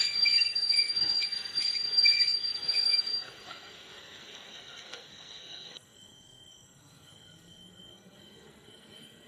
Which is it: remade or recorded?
remade